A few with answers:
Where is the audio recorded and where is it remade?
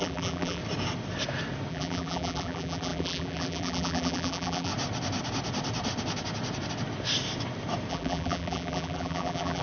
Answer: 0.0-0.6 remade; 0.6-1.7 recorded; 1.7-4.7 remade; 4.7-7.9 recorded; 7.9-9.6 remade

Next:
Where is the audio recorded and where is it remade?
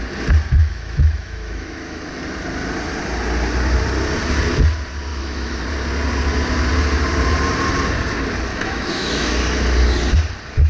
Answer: 0.0-0.6 recorded; 0.6-2.2 remade; 2.2-5.1 recorded; 5.1-5.6 remade; 5.6-8.5 recorded; 8.5-9.3 remade; 9.3-10.7 recorded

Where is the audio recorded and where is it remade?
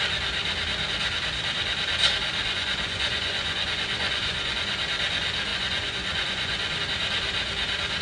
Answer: 0.0-2.4 recorded; 2.4-4.8 remade; 4.8-5.5 recorded; 5.5-6.8 remade; 6.8-8.0 recorded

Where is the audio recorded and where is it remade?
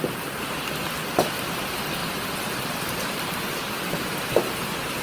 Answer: 0.0-5.0 recorded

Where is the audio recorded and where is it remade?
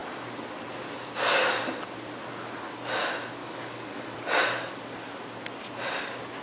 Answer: 0.0-3.4 recorded; 3.4-4.2 remade; 4.2-6.4 recorded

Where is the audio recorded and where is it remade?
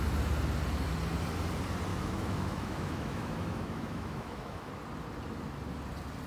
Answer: 0.0-1.9 recorded; 1.9-4.7 remade; 4.7-6.3 recorded